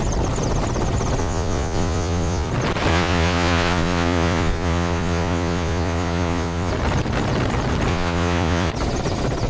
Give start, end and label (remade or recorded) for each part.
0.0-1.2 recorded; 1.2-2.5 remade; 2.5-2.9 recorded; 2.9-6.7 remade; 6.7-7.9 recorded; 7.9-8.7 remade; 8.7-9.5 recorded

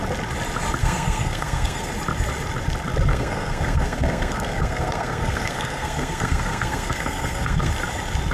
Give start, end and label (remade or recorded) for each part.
0.0-0.8 recorded; 0.8-1.9 remade; 1.9-3.1 recorded; 3.1-7.7 remade; 7.7-8.3 recorded